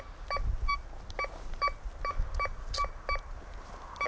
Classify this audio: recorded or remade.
recorded